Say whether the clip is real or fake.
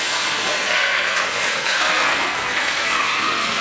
fake